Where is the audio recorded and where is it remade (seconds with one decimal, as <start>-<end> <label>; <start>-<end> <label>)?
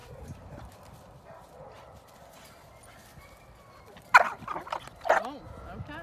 0.0-2.5 remade; 2.5-6.0 recorded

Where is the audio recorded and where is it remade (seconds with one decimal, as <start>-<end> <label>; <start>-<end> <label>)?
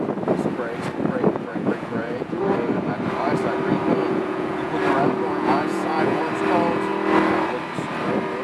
0.0-1.5 recorded; 1.5-2.4 remade; 2.4-4.0 recorded; 4.0-4.8 remade; 4.8-5.3 recorded; 5.3-6.2 remade; 6.2-8.4 recorded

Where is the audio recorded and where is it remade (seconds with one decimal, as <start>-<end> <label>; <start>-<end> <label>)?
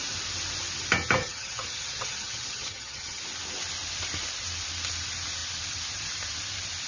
0.0-1.2 recorded; 1.2-3.2 remade; 3.2-6.9 recorded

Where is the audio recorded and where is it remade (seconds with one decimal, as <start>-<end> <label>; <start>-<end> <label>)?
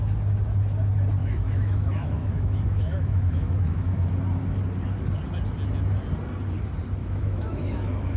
0.0-1.2 recorded; 1.2-4.1 remade; 4.1-7.0 recorded; 7.0-8.2 remade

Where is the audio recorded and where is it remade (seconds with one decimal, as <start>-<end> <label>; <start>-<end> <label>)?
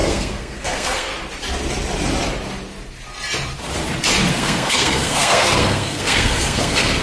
0.0-1.1 remade; 1.1-4.3 recorded; 4.3-7.0 remade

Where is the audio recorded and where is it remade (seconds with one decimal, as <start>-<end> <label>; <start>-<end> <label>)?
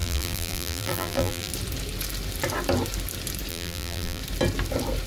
0.0-1.5 remade; 1.5-3.5 recorded; 3.5-4.2 remade; 4.2-5.1 recorded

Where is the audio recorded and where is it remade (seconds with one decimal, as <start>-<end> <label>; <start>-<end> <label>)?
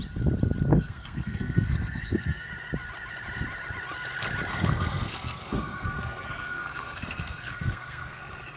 0.0-0.7 recorded; 0.7-2.5 remade; 2.5-4.5 recorded; 4.5-8.2 remade; 8.2-8.6 recorded